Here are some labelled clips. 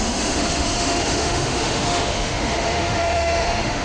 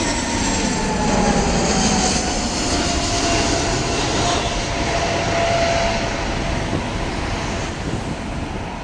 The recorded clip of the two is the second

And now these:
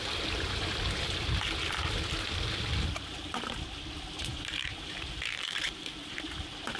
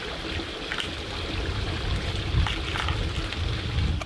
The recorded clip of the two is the second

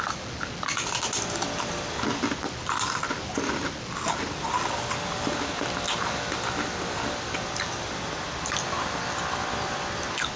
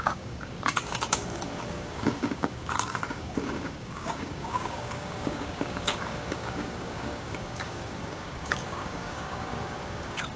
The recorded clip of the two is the first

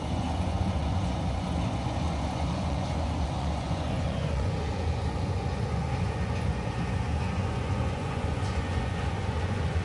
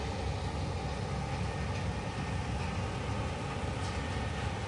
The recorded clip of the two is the second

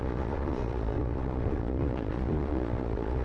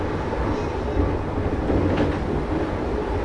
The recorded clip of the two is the second